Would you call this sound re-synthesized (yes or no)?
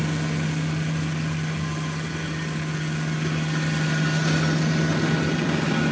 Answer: no